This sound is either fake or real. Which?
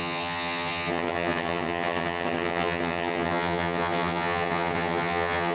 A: fake